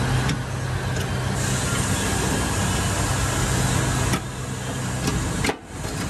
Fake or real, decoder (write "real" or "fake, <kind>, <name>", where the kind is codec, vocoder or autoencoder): real